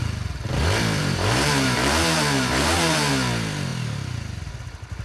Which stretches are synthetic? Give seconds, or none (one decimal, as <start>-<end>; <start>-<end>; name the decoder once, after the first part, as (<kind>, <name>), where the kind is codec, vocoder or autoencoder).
1.0-3.1 (vocoder, BigVGAN v2)